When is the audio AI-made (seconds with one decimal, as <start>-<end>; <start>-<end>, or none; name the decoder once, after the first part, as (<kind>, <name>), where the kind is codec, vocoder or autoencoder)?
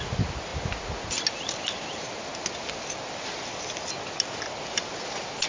none